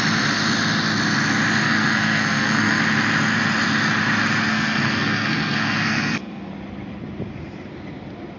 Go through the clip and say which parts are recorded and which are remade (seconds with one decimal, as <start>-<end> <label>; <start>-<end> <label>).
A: 0.0-1.6 recorded; 1.6-2.8 remade; 2.8-4.5 recorded; 4.5-6.5 remade; 6.5-8.4 recorded